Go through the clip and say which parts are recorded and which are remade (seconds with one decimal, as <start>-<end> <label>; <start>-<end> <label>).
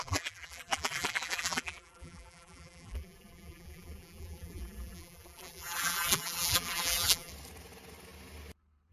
0.0-7.3 remade; 7.3-8.9 recorded